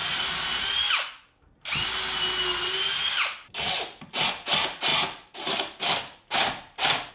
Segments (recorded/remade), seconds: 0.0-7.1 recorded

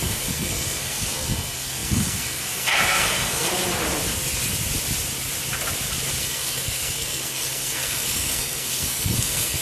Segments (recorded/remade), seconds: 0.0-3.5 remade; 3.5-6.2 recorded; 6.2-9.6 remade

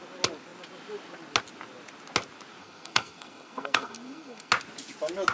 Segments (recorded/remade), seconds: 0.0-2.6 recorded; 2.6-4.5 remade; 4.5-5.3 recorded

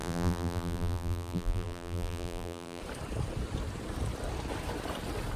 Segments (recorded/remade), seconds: 0.0-2.8 remade; 2.8-5.4 recorded